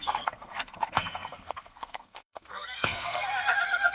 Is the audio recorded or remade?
remade